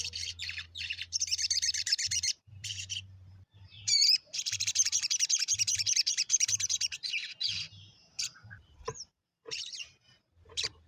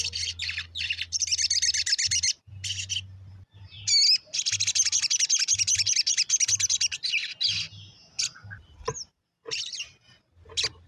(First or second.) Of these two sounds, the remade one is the first